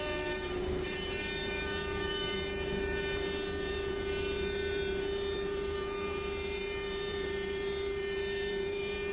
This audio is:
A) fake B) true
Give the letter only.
A